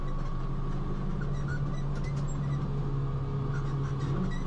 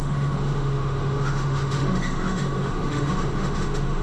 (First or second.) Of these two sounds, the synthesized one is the second